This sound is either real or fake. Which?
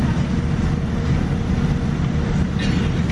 real